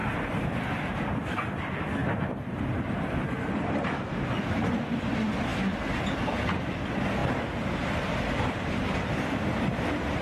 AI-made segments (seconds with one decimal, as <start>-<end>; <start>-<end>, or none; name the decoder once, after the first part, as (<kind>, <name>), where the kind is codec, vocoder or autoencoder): 0.0-0.5 (vocoder, BigVGAN v2); 7.2-9.1